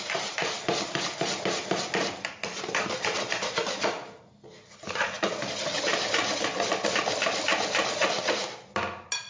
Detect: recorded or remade recorded